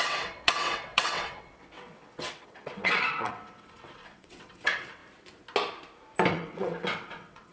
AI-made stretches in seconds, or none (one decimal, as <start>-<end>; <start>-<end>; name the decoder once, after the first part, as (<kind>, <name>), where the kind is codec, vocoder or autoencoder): 0.0-5.0 (vocoder, WaveNeXt); 6.3-7.5

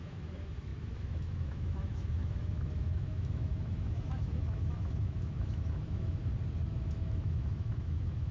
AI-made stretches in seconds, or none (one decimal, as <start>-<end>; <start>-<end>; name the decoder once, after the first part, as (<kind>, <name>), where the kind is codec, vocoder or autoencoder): 0.0-6.2 (autoencoder, DAC-VAE); 6.7-8.3